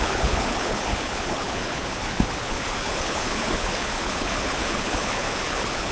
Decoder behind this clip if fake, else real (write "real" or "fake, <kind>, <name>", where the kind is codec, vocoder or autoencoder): fake, codec, HILCodec